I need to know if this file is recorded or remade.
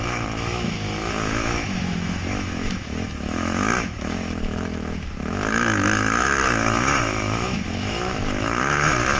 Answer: remade